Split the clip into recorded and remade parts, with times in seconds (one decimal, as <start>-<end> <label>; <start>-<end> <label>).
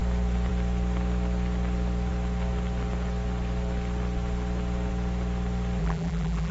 0.0-5.8 recorded; 5.8-6.5 remade